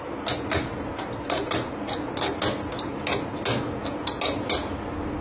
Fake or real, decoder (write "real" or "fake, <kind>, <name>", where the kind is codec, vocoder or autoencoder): real